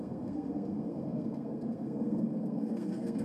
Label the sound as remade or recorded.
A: remade